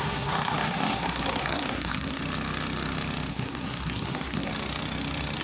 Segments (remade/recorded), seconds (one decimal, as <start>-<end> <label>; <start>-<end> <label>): 0.0-2.2 remade; 2.2-3.3 recorded; 3.3-4.5 remade; 4.5-5.4 recorded